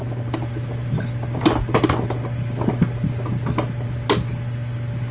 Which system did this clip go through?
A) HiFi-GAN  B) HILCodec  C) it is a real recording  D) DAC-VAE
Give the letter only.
C